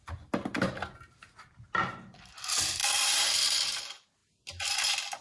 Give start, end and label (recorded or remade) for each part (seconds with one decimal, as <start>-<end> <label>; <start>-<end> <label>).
0.0-5.2 recorded